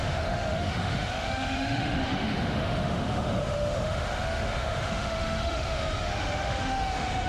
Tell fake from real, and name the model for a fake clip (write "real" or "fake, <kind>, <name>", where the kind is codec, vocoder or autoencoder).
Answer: fake, autoencoder, DAC-VAE